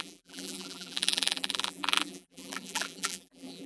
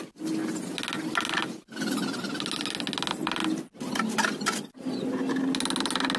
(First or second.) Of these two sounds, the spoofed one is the first